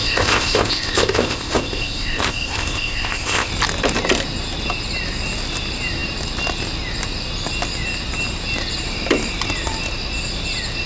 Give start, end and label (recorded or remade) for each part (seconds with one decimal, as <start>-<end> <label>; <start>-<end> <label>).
0.0-3.5 remade; 3.5-10.9 recorded